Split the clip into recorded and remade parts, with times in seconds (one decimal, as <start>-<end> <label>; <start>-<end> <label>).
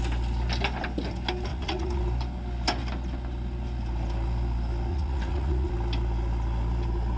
0.0-1.5 recorded; 1.5-2.0 remade; 2.0-4.9 recorded; 4.9-5.7 remade; 5.7-7.2 recorded